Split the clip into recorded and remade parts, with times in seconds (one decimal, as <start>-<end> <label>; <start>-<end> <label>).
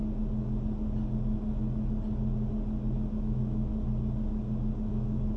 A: 0.0-3.2 recorded; 3.2-3.7 remade; 3.7-4.9 recorded; 4.9-5.4 remade